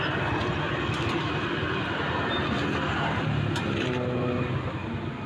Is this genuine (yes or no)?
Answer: yes